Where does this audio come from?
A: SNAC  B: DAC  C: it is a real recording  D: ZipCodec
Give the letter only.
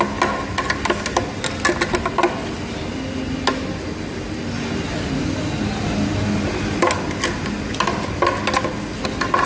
C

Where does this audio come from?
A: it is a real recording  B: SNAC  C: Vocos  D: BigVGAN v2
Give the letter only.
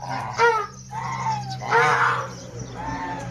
A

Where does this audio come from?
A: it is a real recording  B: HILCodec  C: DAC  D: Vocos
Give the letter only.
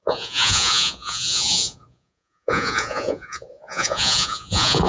D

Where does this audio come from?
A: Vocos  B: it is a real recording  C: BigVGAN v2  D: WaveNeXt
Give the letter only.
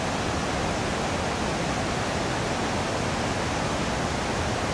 B